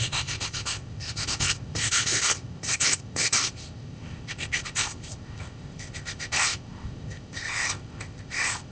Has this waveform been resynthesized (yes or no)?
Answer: yes